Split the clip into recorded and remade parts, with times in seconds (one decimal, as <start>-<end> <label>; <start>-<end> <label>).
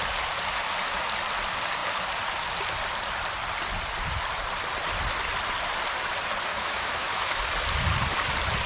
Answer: 0.0-6.5 recorded; 6.5-7.4 remade; 7.4-8.7 recorded